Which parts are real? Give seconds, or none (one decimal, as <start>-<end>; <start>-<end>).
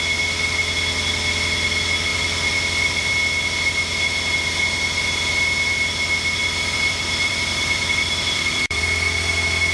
0.0-2.1; 3.1-6.4; 8.8-9.7